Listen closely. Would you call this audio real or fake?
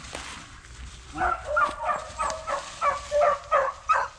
real